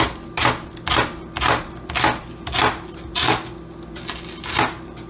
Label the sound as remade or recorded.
recorded